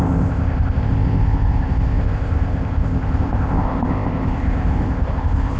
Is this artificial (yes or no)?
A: yes